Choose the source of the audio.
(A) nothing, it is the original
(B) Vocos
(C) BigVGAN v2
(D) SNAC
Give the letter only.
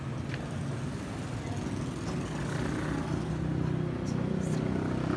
A